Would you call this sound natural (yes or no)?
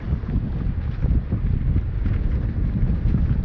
yes